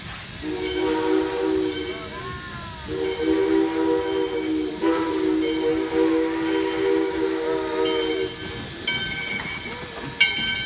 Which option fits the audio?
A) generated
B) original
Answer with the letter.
B